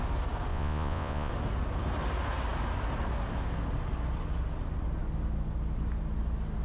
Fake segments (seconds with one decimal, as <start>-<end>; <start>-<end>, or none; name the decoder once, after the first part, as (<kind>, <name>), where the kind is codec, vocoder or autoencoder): 0.5-1.3 (vocoder, Vocos)